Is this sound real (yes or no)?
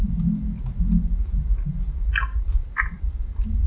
yes